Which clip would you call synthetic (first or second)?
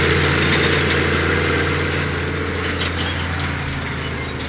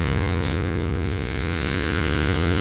second